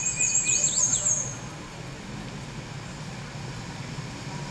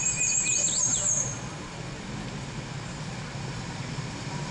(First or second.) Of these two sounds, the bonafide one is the first